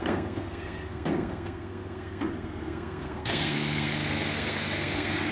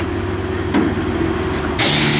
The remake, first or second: first